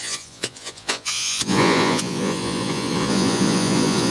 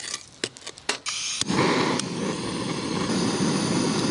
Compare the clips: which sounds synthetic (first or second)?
first